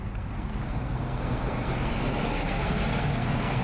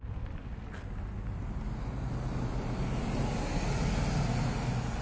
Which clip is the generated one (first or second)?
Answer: first